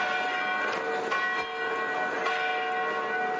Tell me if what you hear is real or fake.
real